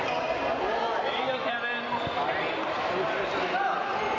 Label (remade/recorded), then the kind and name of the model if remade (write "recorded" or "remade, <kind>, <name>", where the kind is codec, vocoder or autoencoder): recorded